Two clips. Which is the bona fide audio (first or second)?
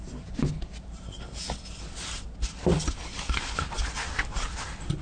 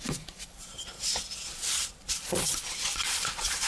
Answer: first